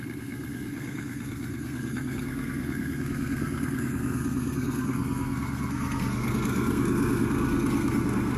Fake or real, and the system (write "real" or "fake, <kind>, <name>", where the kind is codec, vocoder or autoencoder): fake, codec, SNAC